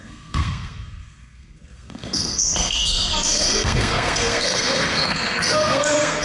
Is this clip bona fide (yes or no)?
no